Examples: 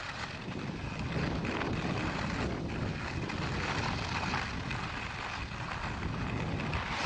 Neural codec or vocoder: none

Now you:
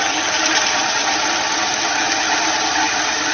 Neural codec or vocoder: none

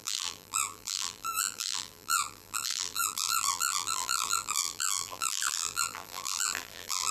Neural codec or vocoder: vocoder, BigVGAN v2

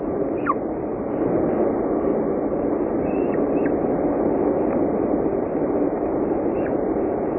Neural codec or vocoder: none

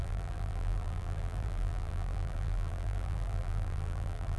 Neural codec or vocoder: vocoder, BigVGAN v2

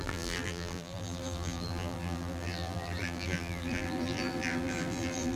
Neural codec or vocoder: vocoder, BigVGAN v2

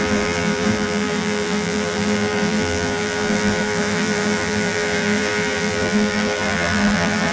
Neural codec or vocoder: vocoder, BigVGAN v2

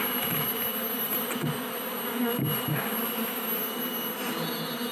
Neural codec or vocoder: none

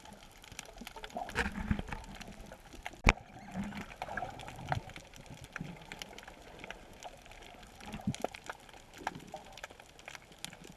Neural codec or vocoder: none